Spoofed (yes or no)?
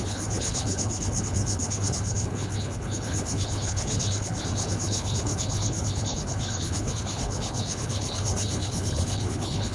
yes